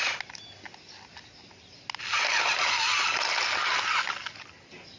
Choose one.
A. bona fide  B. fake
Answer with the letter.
A